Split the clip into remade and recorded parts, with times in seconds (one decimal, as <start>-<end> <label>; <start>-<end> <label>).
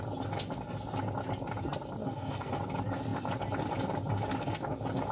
0.0-2.0 recorded; 2.0-2.5 remade; 2.5-5.1 recorded